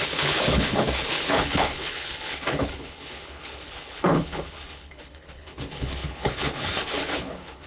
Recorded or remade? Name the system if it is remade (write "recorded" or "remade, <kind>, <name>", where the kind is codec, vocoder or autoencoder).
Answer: remade, codec, HILCodec